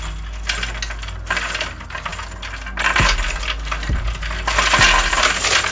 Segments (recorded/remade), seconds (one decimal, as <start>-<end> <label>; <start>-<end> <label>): 0.0-5.7 recorded